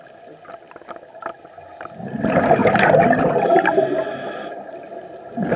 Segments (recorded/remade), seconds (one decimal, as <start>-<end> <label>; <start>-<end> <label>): 0.0-5.6 recorded